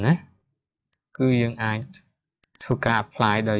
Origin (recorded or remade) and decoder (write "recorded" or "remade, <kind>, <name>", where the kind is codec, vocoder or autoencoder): recorded